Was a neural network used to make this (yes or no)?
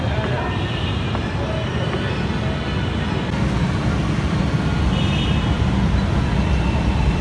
no